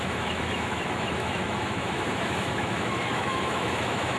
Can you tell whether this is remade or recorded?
remade